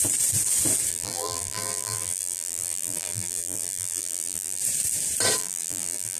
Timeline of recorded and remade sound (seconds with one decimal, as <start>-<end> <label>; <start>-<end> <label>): 0.0-0.9 recorded; 0.9-4.6 remade; 4.6-5.4 recorded; 5.4-6.2 remade